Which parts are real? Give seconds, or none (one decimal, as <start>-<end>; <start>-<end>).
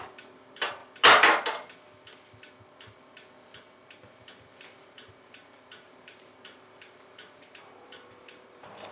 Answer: 0.8-4.5